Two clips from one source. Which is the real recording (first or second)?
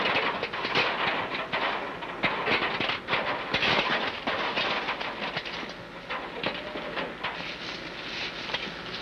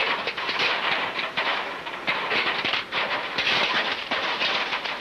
first